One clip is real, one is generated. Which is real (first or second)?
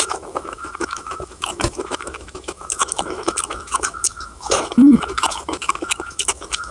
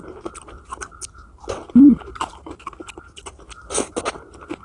second